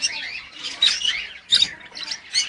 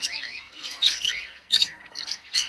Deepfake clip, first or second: second